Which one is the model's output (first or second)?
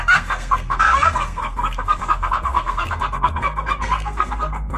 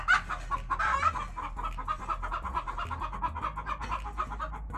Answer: first